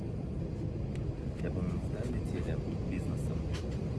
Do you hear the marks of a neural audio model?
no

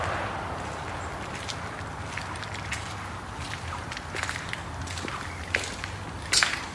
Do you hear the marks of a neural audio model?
no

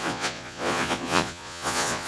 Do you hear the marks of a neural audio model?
yes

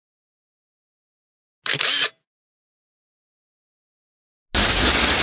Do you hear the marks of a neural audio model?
no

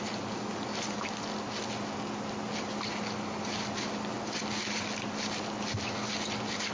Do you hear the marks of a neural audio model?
no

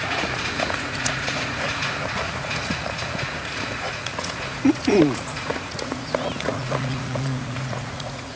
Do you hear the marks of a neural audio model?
yes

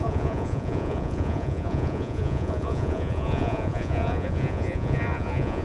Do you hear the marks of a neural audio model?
yes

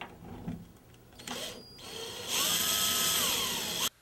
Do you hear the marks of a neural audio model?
no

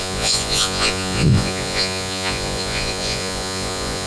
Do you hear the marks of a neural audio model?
yes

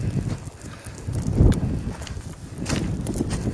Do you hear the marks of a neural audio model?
no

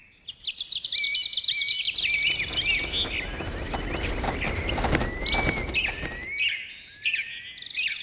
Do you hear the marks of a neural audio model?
no